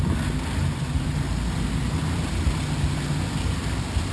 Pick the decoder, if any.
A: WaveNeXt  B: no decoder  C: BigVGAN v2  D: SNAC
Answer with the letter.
B